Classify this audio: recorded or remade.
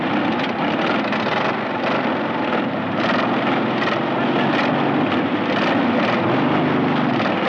recorded